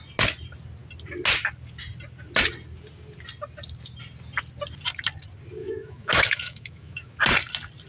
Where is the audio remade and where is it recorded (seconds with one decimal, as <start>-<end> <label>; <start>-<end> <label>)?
0.0-5.6 recorded; 5.6-7.2 remade; 7.2-7.9 recorded